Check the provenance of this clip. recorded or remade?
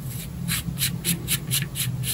recorded